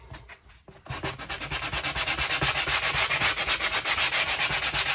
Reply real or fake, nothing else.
real